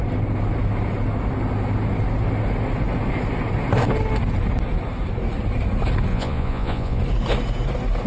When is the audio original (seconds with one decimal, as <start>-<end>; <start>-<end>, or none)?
0.0-6.1; 7.0-8.1